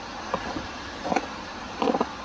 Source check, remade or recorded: recorded